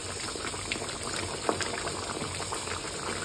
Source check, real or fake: real